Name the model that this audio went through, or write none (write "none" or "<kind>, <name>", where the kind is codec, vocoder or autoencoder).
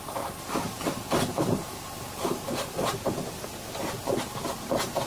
none